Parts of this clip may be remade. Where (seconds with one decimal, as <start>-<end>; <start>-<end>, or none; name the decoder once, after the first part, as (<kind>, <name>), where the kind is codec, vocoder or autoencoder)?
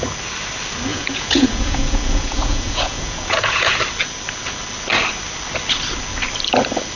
0.9-3.8 (vocoder, Vocos)